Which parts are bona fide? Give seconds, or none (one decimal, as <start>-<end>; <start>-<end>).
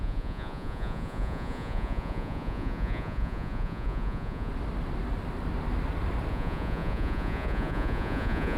4.5-6.3